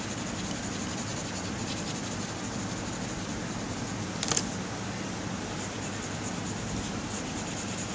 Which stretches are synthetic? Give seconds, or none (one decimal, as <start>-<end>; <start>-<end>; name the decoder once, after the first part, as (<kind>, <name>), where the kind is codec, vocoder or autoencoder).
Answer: 1.1-2.3 (vocoder, BigVGAN v2)